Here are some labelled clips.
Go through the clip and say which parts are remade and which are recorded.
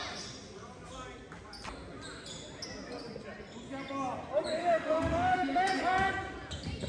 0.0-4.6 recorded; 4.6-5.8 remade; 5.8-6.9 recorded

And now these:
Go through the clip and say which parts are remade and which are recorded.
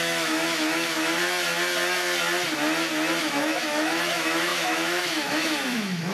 0.0-1.2 remade; 1.2-3.2 recorded; 3.2-6.1 remade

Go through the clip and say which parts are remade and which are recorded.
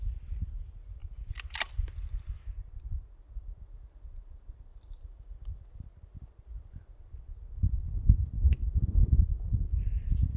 0.0-1.0 recorded; 1.0-2.4 remade; 2.4-4.7 recorded; 4.7-5.6 remade; 5.6-9.0 recorded; 9.0-9.8 remade; 9.8-10.4 recorded